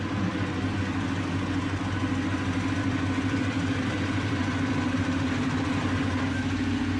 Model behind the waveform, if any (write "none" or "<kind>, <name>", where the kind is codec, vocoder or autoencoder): none